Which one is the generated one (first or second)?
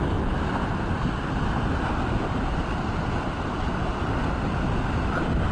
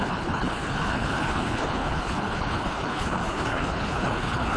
second